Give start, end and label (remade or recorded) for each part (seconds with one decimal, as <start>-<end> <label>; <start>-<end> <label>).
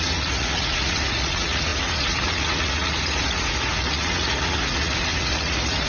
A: 0.0-5.9 remade